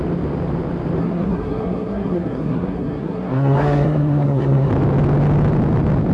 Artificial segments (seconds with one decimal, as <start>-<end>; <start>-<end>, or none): 1.0-4.7